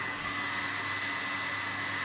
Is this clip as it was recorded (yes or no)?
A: yes